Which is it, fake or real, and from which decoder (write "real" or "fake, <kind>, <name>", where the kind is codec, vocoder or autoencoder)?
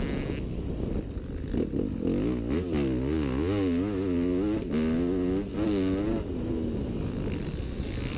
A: real